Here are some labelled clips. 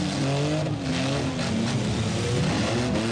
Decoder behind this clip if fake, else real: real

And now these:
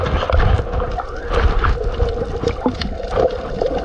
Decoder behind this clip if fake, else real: real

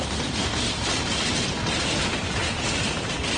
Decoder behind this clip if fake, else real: real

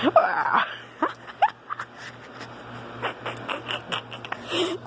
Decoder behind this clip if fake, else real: real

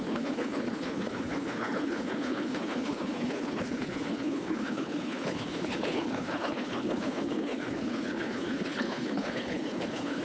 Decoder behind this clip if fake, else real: fake, codec, HILCodec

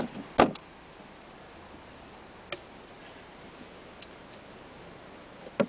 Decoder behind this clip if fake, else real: real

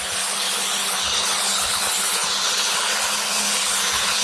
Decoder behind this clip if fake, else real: fake, codec, HILCodec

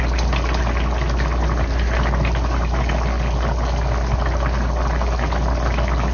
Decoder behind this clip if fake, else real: real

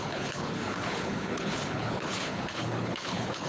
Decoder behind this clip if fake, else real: fake, codec, HILCodec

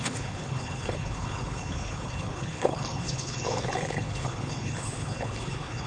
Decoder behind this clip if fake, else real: fake, codec, HILCodec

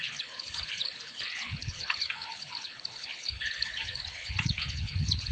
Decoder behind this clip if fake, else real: fake, codec, HILCodec